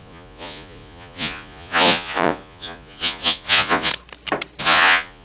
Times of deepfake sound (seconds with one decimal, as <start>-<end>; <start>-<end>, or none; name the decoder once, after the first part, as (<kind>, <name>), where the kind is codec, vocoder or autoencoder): 0.0-3.9 (vocoder, Vocos); 4.6-5.2